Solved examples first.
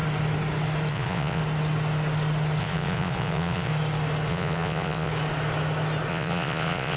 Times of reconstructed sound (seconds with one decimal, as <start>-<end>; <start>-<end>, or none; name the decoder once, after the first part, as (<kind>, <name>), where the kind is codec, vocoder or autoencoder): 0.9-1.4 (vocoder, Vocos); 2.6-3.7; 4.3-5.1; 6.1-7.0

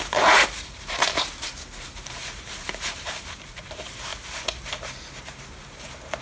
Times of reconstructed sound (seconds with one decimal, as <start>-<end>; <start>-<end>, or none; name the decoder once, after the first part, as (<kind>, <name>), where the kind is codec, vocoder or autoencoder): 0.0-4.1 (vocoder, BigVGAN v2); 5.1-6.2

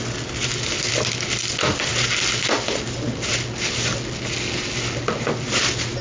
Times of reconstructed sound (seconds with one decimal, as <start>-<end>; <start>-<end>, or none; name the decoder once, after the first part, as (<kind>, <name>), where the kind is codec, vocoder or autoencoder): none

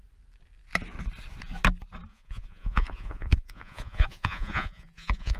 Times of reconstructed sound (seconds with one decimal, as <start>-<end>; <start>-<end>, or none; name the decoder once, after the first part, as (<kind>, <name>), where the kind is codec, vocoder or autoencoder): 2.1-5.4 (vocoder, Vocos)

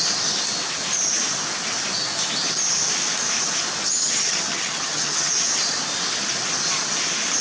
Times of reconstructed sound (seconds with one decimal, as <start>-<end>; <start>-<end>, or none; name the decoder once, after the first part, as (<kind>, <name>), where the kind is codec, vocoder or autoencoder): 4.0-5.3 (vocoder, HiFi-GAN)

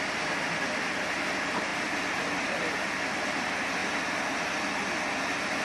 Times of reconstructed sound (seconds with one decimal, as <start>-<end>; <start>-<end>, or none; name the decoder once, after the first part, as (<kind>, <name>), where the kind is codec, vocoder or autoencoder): 1.7-2.7 (vocoder, BigVGAN v2)

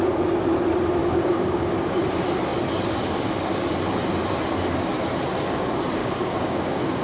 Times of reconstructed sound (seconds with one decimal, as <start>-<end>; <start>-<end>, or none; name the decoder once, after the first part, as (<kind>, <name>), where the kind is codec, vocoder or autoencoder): 1.0-1.7 (codec, DAC); 6.0-7.0